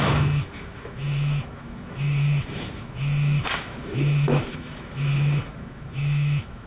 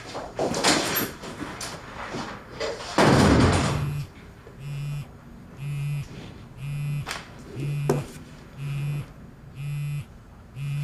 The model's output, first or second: first